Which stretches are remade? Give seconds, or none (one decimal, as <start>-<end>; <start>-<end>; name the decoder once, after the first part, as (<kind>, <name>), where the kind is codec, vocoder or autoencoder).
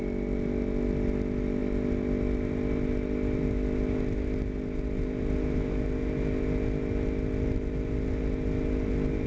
none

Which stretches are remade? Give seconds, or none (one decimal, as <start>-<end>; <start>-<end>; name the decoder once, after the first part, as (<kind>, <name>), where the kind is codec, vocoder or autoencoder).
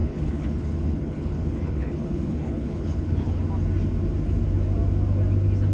0.0-3.4 (codec, HILCodec)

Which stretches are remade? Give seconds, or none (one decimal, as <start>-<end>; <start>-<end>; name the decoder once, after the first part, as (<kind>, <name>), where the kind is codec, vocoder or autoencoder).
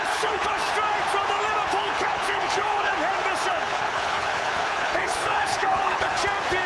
0.0-0.6 (codec, HILCodec); 1.8-2.9; 3.5-6.2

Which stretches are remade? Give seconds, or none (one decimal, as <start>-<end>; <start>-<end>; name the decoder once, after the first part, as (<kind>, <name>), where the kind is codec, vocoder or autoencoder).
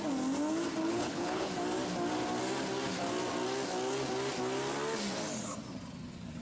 0.9-1.5 (codec, HILCodec)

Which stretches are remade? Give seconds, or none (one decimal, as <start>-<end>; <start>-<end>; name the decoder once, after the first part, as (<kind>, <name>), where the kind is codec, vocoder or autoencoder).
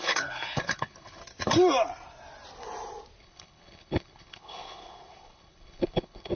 0.0-1.2 (codec, HILCodec); 3.2-6.4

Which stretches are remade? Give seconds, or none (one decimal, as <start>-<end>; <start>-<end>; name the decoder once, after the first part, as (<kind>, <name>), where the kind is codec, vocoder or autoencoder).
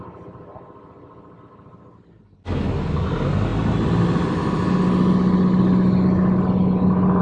none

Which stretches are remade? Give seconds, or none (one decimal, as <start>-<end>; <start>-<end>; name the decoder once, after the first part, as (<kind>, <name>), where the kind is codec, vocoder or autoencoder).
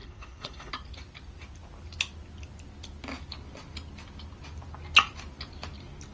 0.0-0.7 (codec, HILCodec)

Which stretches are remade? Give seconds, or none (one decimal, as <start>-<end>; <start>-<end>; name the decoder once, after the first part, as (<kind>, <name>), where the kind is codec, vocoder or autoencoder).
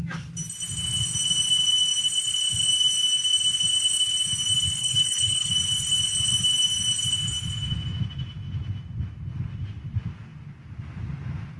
4.8-5.5 (codec, HILCodec)